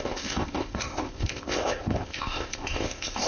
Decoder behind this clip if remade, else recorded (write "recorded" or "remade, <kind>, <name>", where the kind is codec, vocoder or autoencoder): remade, codec, ZipCodec